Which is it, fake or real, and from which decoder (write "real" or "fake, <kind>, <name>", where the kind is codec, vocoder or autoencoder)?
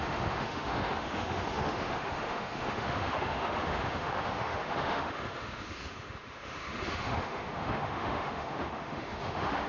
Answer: fake, autoencoder, DAC-VAE